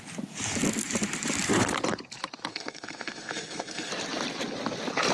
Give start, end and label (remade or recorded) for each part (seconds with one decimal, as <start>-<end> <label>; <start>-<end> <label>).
0.0-2.5 recorded; 2.5-3.9 remade; 3.9-5.1 recorded